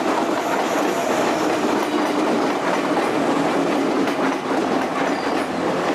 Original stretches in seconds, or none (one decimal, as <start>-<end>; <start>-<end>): 0.0-5.9